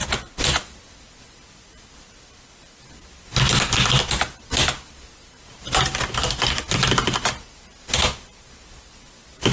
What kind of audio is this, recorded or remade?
recorded